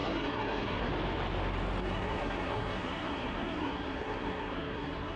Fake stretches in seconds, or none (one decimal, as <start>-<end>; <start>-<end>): 0.0-0.9; 1.8-5.2